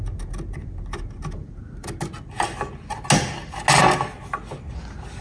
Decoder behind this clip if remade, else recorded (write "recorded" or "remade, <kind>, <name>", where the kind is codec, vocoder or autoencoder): recorded